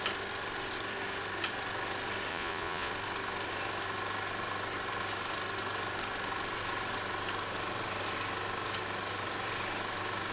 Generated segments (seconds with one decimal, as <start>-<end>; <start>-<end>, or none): 2.3-2.9